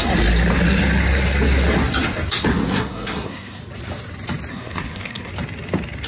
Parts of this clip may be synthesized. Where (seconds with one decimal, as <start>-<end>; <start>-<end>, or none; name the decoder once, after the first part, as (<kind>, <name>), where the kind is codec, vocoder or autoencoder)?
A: 2.7-3.6 (codec, SNAC); 4.5-5.3